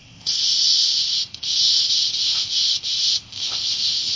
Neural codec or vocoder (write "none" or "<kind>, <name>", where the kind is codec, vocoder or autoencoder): codec, ZipCodec